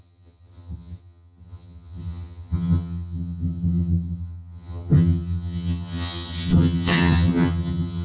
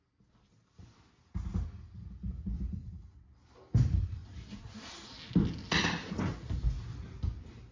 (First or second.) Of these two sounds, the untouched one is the second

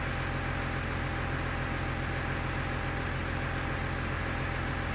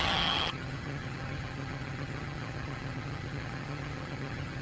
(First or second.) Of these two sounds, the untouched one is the first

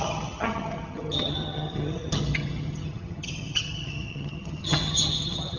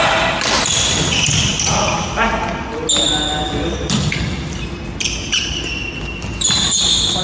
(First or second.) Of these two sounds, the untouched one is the second